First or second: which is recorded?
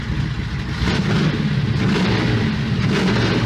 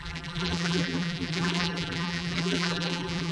first